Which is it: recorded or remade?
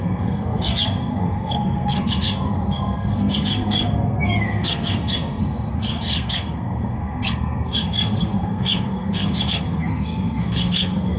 remade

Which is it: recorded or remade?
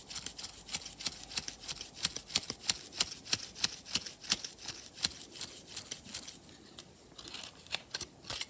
recorded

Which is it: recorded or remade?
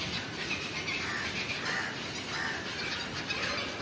recorded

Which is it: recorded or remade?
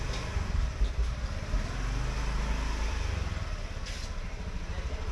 recorded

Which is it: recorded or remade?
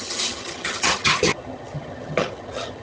remade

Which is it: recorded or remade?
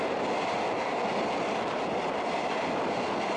recorded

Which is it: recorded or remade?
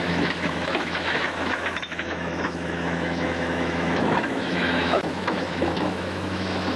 remade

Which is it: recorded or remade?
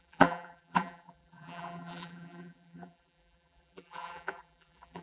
remade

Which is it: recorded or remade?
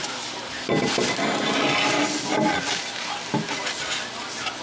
recorded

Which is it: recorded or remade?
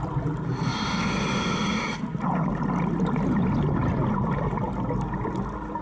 recorded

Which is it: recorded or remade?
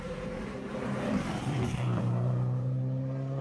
remade